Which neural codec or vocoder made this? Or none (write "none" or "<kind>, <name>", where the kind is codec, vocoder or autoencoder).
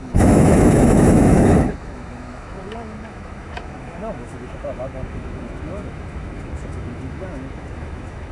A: autoencoder, DAC-VAE